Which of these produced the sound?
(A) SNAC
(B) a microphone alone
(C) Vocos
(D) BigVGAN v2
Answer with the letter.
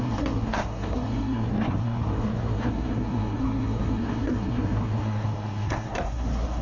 A